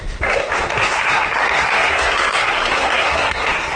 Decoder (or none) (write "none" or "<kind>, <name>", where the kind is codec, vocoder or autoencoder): codec, SNAC